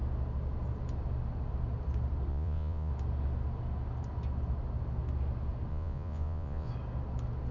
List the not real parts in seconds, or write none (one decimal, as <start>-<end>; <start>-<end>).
2.3-2.9; 5.7-6.7